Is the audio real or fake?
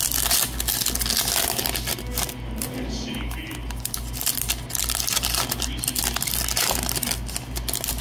real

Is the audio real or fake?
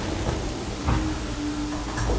real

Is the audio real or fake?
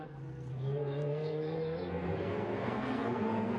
fake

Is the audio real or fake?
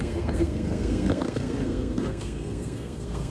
fake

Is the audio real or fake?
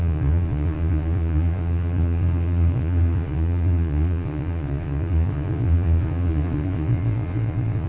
fake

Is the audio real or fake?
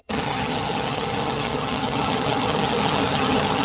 fake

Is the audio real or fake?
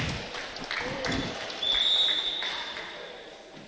real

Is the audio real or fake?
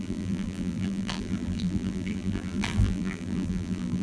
fake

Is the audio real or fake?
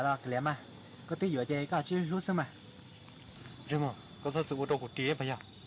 real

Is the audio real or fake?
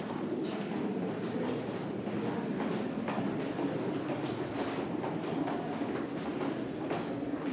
real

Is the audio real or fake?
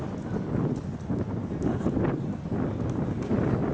real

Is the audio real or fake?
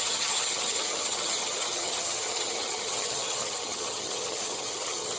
fake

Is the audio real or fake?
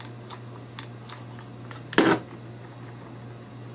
real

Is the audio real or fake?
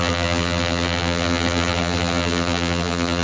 fake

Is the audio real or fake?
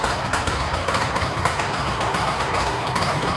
fake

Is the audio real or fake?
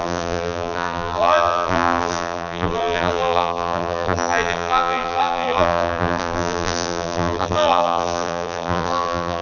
fake